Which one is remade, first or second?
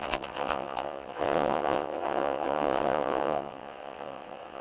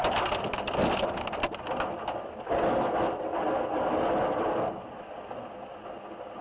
first